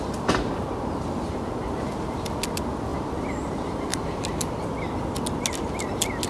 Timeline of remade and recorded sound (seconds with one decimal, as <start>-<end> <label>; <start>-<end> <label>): 0.0-6.3 recorded